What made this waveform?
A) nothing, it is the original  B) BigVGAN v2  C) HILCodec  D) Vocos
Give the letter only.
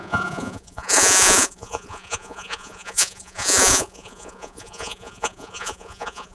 D